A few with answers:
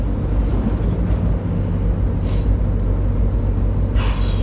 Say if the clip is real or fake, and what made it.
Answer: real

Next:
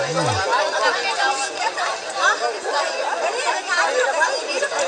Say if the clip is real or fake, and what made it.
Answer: real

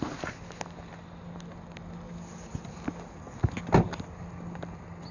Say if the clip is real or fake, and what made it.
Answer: real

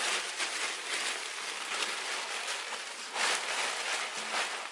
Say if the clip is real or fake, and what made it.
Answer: real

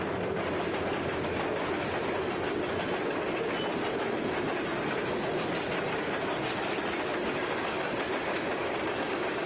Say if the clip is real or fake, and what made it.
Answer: real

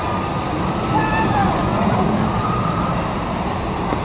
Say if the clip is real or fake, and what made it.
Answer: real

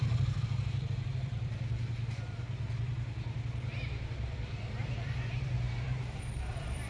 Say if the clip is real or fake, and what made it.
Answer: fake, vocoder, BigVGAN v2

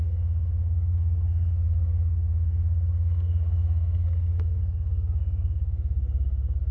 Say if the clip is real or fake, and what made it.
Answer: fake, codec, SNAC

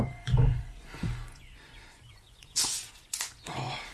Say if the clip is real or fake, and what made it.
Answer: fake, vocoder, Vocos